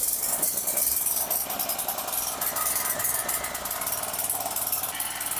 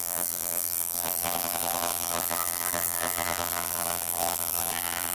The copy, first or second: second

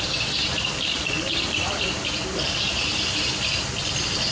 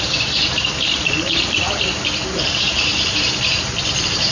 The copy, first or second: second